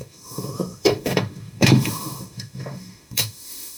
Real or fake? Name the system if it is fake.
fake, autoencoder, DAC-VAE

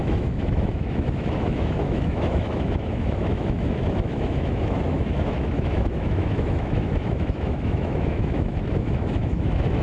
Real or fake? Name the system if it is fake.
fake, autoencoder, DAC-VAE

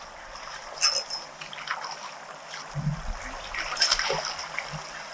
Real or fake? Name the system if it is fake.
real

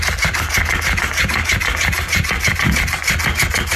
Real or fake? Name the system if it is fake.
real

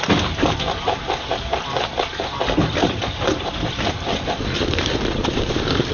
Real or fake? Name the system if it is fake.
fake, vocoder, BigVGAN v2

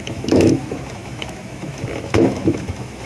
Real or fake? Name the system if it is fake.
fake, autoencoder, DAC-VAE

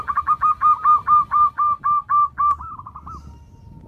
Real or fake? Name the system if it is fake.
real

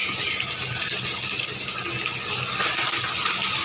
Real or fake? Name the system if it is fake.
real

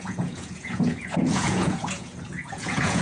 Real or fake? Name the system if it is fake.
fake, vocoder, Vocos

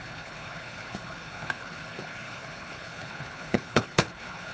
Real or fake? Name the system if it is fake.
fake, codec, HILCodec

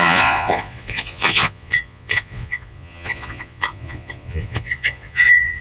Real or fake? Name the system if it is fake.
fake, vocoder, Vocos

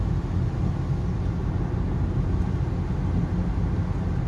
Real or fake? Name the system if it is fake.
real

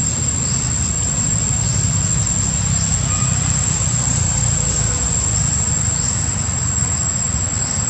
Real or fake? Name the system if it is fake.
real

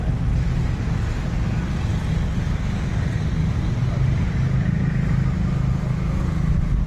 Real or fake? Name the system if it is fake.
real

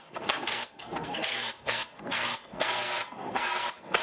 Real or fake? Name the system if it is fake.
fake, codec, SNAC